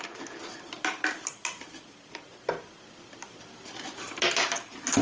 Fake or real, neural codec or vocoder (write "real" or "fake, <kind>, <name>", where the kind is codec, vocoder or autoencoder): real